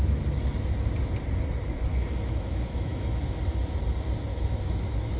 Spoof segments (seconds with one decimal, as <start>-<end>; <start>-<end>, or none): 1.9-3.4; 4.3-5.2

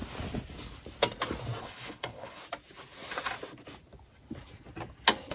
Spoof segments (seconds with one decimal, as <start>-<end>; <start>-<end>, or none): 1.6-2.4

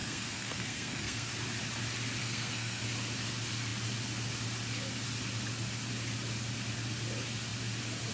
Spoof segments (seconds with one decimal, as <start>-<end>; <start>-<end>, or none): 0.0-1.3; 2.2-2.8

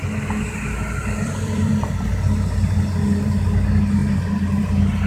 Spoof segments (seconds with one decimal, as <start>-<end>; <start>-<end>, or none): 1.0-2.2; 4.0-4.6

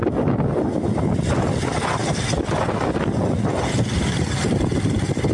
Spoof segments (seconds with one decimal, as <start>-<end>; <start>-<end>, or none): none

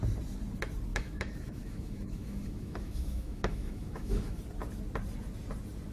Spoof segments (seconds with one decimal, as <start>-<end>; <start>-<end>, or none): 0.9-4.4